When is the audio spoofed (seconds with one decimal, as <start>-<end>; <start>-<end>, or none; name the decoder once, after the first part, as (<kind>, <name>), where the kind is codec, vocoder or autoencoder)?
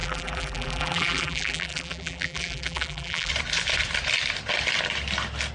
0.0-3.3 (vocoder, BigVGAN v2)